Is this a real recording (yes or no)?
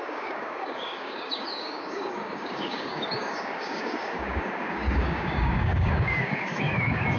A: no